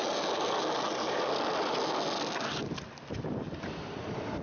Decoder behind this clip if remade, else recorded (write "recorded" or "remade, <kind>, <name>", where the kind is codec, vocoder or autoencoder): recorded